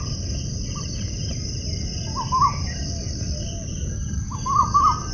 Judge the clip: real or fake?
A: real